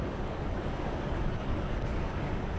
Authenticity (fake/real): fake